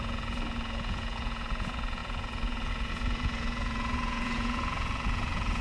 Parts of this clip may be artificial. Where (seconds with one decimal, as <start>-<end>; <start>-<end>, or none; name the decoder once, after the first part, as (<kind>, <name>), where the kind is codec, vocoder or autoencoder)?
0.0-5.6 (vocoder, Vocos)